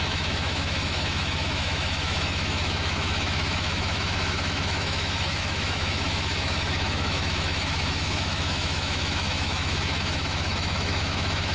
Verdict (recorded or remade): remade